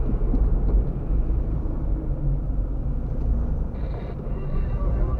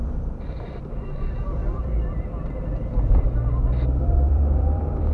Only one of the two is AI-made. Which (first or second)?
second